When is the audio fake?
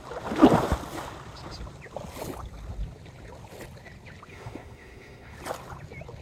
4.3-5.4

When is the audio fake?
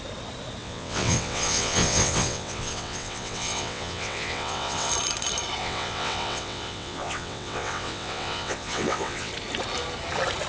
0.6-4.9; 5.6-9.3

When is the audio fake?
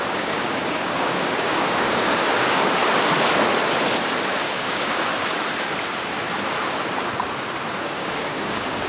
0.0-2.8; 4.5-5.1; 7.8-8.9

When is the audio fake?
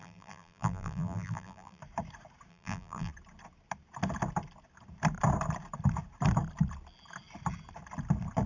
0.0-1.8; 2.5-3.1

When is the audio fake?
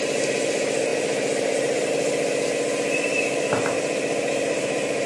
4.2-5.1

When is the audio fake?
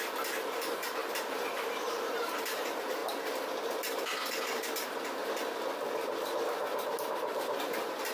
0.0-3.0; 4.3-5.2; 7.0-8.1